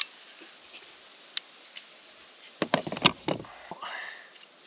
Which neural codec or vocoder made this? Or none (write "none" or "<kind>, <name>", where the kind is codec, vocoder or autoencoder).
none